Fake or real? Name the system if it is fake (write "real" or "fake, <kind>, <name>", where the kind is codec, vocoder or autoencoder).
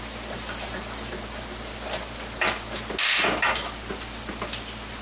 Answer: real